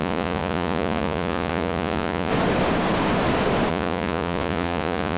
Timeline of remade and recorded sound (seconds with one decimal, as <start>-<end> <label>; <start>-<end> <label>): 0.0-2.3 remade; 2.3-3.7 recorded; 3.7-5.2 remade

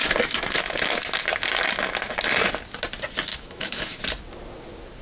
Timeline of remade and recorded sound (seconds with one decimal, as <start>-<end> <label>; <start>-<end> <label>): 0.0-3.3 recorded; 3.3-4.0 remade; 4.0-5.0 recorded

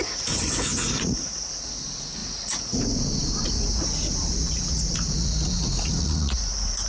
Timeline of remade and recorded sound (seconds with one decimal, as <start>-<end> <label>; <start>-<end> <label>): 0.0-6.9 remade

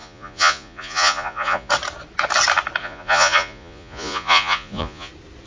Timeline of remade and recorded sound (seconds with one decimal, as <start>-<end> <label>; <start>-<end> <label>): 0.0-1.7 remade; 1.7-2.8 recorded; 2.8-5.1 remade; 5.1-5.5 recorded

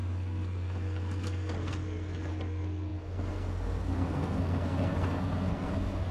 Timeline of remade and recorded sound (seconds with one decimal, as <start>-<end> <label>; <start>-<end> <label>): 0.0-6.1 remade

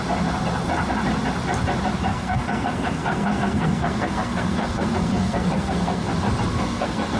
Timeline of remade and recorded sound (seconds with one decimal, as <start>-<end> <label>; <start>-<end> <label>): 0.0-2.1 recorded; 2.1-6.1 remade; 6.1-6.5 recorded; 6.5-7.2 remade

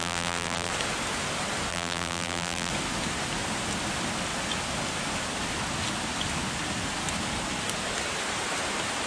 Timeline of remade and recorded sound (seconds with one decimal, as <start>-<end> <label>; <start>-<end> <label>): 0.0-0.7 remade; 0.7-1.7 recorded; 1.7-2.7 remade; 2.7-9.1 recorded

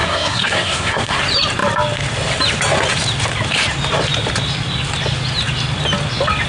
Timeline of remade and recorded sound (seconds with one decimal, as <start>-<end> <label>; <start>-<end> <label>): 0.0-1.2 remade; 1.2-6.5 recorded